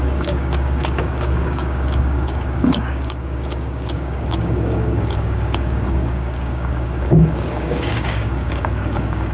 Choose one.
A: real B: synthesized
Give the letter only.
B